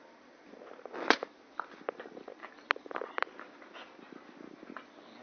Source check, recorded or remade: recorded